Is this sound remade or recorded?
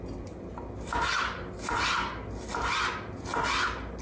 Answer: recorded